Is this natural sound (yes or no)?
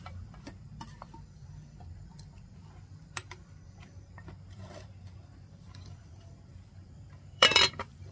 no